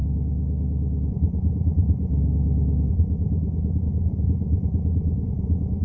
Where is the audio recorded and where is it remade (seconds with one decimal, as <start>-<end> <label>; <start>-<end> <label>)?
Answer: 0.0-1.1 recorded; 1.1-2.1 remade; 2.1-2.9 recorded; 2.9-5.8 remade